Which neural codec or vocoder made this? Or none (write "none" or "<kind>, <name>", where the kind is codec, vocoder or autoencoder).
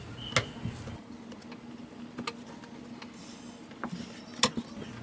none